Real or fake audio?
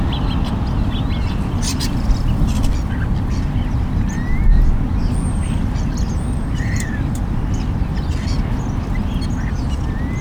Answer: real